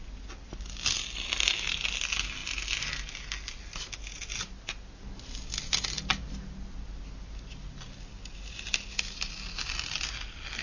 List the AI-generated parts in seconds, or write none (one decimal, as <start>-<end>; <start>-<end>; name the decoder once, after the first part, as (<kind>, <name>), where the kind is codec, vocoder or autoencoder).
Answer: none

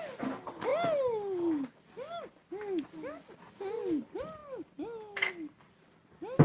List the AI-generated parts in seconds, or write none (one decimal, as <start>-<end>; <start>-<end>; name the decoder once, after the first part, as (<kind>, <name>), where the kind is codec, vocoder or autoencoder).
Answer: none